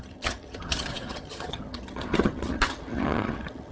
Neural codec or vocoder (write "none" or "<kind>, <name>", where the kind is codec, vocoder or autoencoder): vocoder, HiFi-GAN